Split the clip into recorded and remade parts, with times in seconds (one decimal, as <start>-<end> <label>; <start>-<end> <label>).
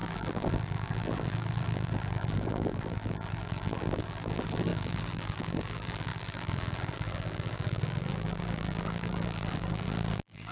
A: 0.0-10.5 remade